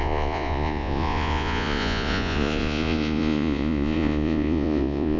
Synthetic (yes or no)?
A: yes